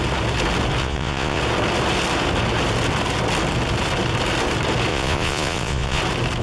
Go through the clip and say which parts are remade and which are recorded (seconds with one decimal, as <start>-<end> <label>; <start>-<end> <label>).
0.0-0.8 recorded; 0.8-1.4 remade; 1.4-4.9 recorded; 4.9-6.0 remade; 6.0-6.4 recorded